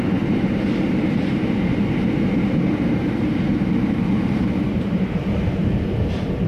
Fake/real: fake